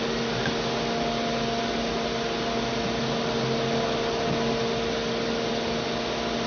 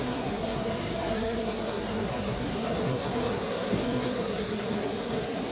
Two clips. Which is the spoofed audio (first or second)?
second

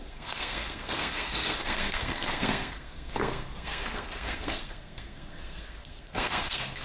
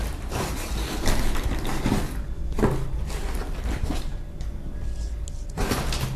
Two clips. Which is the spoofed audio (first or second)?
first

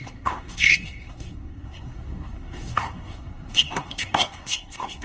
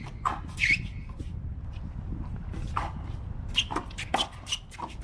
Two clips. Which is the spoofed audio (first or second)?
first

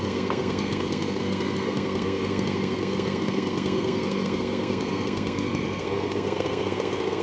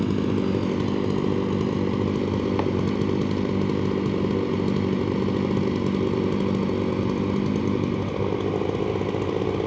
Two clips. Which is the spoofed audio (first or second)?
first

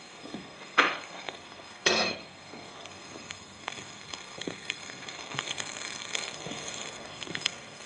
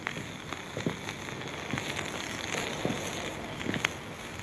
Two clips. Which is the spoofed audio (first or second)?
first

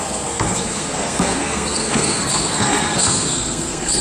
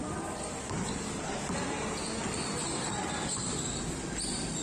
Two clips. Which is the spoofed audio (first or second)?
first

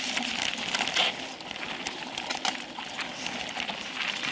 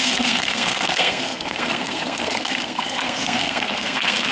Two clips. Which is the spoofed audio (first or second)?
second